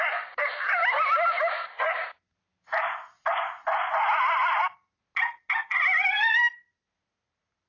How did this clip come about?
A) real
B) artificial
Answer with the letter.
A